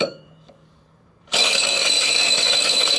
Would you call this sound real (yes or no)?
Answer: no